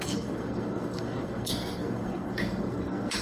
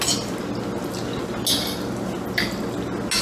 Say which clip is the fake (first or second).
first